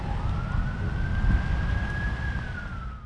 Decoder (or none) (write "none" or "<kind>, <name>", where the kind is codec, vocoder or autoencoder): none